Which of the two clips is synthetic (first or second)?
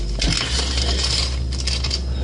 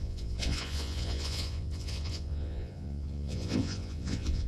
second